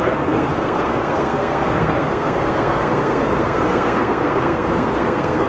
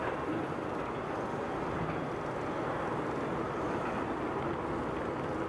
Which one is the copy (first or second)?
first